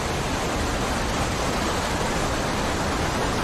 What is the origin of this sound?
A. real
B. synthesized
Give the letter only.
A